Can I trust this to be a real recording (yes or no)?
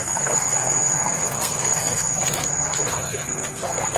no